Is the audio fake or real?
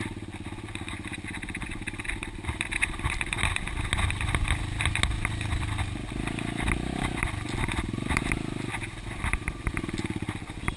real